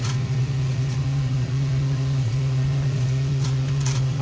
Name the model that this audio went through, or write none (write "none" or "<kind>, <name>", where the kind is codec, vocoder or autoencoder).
vocoder, Vocos